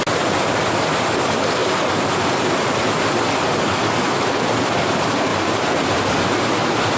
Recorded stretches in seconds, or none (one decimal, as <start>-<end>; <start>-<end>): 0.0-5.3; 6.2-7.0